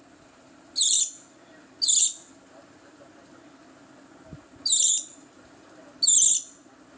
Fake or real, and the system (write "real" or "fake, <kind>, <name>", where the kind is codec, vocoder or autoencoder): real